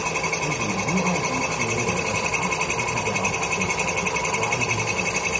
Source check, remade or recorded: recorded